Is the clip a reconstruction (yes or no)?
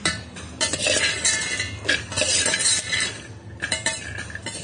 no